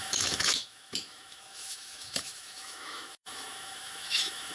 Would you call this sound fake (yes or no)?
yes